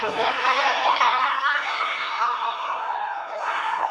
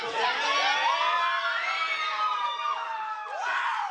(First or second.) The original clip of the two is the second